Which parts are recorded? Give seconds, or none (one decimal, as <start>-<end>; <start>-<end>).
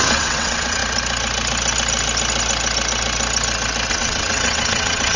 0.8-3.9